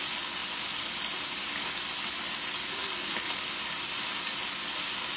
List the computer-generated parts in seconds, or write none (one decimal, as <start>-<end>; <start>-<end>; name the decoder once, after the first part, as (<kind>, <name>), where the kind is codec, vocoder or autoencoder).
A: none